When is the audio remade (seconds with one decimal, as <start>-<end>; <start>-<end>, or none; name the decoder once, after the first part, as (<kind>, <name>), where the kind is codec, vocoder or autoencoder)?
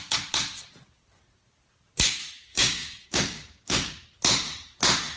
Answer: 2.5-3.9 (codec, DAC)